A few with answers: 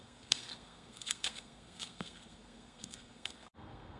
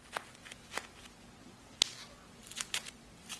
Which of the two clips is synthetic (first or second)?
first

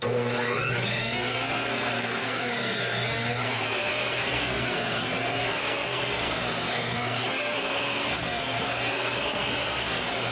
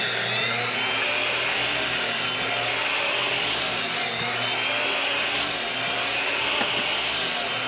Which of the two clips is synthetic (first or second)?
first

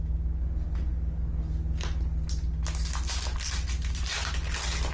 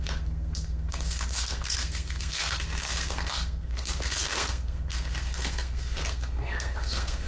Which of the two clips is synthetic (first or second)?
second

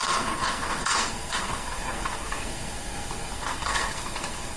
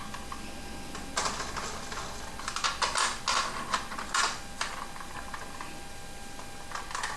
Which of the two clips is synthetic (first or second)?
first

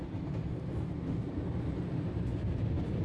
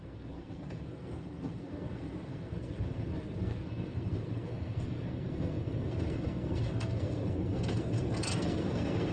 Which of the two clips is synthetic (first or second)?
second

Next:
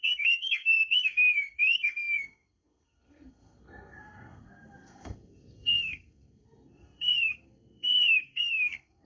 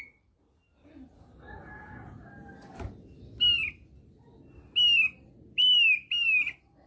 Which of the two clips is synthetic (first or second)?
first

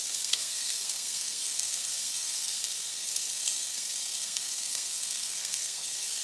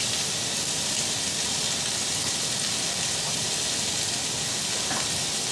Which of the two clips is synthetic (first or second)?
first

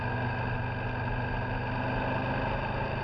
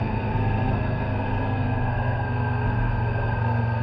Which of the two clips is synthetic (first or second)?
second